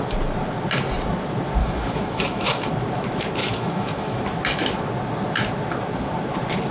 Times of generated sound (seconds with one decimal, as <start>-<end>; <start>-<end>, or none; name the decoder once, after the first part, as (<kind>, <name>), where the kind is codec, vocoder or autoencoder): 1.6-2.7 (autoencoder, DAC-VAE); 3.4-4.2